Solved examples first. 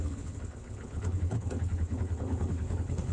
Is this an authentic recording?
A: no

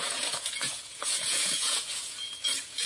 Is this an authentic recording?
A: no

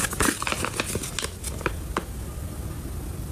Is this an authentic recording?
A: yes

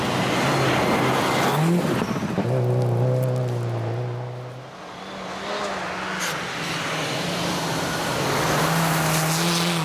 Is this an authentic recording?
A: yes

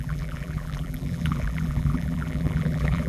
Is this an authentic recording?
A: no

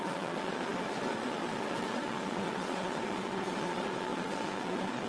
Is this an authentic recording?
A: no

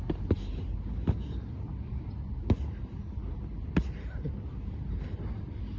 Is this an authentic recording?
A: yes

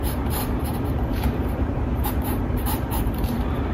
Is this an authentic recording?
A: no